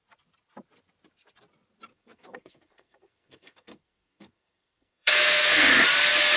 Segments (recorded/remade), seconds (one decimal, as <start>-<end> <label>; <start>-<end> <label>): 0.0-1.9 recorded; 1.9-5.7 remade; 5.7-6.4 recorded